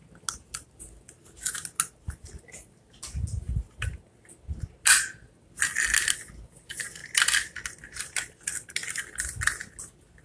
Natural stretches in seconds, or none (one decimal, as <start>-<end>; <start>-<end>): 0.0-10.2